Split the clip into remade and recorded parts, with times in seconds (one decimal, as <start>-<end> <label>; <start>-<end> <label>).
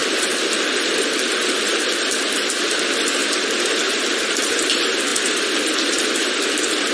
0.0-1.9 remade; 1.9-5.1 recorded; 5.1-6.9 remade